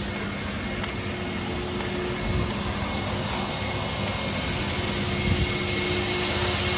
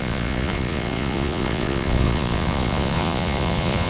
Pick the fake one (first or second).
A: second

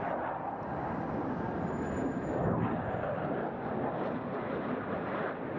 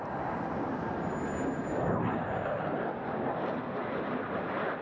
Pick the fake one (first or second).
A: first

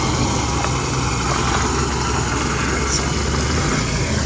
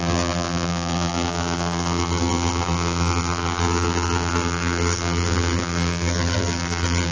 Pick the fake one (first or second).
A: second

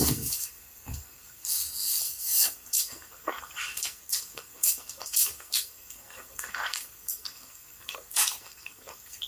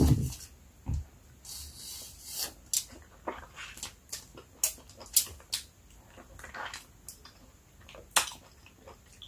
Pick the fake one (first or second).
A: first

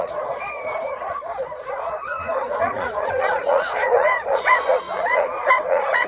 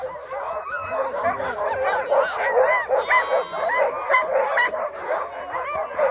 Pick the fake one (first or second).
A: first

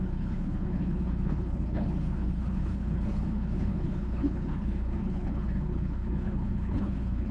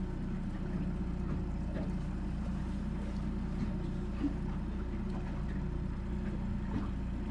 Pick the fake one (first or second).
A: first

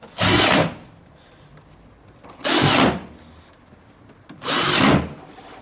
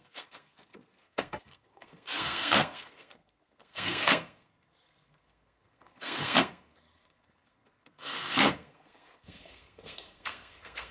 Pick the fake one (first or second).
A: second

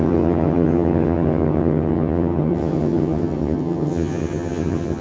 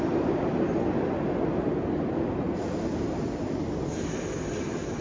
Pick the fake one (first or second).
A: first